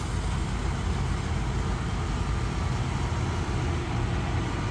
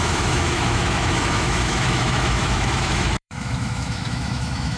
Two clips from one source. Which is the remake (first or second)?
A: second